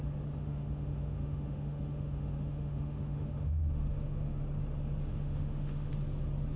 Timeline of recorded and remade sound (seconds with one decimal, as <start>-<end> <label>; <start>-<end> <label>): 0.0-0.4 recorded; 0.4-4.4 remade; 4.4-5.1 recorded; 5.1-5.9 remade; 5.9-6.6 recorded